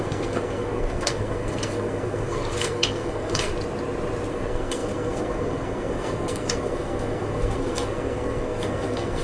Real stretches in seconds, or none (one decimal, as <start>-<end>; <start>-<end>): 3.5-4.3